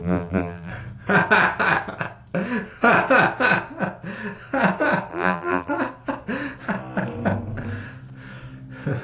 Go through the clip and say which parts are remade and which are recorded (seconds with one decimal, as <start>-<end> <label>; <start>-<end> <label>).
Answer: 0.0-0.7 remade; 0.7-5.1 recorded; 5.1-5.7 remade; 5.7-9.0 recorded